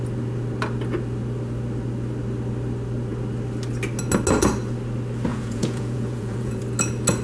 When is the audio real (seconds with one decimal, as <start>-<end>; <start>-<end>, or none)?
0.0-5.3; 6.6-7.2